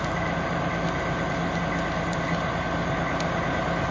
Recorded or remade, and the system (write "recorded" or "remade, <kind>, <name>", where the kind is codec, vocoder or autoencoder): recorded